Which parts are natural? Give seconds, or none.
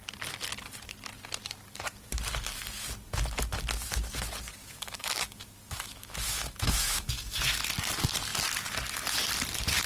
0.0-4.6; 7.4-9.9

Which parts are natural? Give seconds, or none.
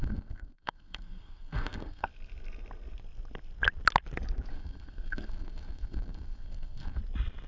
2.1-4.5; 7.0-7.5